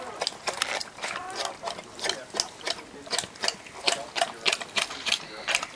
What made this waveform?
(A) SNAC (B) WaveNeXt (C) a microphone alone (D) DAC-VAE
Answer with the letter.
C